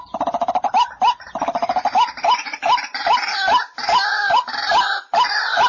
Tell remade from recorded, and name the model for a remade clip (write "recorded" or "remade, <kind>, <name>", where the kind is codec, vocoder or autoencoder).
recorded